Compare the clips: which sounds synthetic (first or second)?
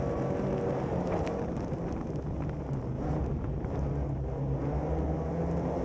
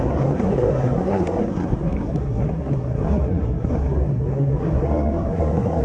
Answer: second